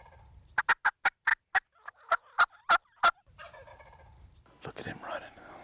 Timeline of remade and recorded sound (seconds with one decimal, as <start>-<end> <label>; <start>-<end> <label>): 0.0-5.6 recorded